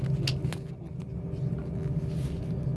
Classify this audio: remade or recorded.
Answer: recorded